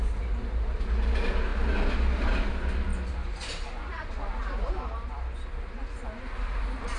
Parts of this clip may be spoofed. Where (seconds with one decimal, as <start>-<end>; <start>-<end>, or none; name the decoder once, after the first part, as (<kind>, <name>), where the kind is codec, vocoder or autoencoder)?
none